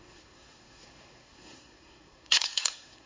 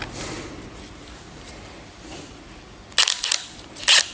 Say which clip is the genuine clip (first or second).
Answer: second